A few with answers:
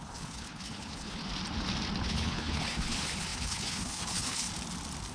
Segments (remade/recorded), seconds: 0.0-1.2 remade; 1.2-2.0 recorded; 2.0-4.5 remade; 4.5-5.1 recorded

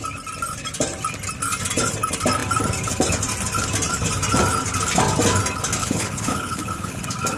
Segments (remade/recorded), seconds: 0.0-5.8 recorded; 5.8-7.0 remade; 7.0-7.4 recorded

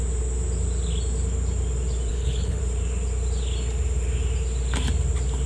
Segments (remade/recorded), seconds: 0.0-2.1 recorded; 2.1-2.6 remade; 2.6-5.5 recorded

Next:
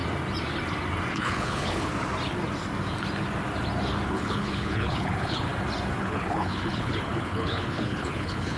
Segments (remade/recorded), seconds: 0.0-1.1 recorded; 1.1-1.9 remade; 1.9-4.1 recorded; 4.1-5.5 remade; 5.5-6.0 recorded; 6.0-8.6 remade